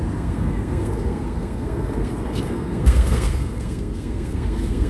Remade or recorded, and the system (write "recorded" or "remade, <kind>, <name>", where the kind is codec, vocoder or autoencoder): remade, codec, SNAC